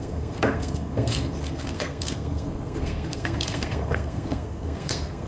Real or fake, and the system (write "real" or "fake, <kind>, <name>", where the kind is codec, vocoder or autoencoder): fake, codec, SNAC